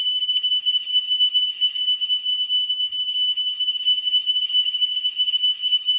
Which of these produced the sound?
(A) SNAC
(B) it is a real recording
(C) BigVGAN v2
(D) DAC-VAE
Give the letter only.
D